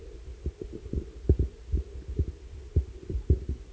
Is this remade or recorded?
recorded